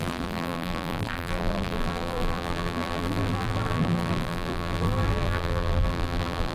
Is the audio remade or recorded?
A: remade